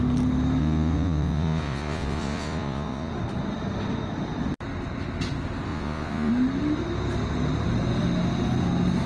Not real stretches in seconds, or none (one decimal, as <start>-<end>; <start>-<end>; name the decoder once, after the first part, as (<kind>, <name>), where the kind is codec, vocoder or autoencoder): 0.6-3.1 (vocoder, Vocos); 5.7-6.3